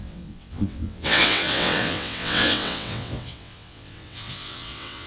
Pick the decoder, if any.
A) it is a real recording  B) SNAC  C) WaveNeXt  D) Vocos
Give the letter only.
C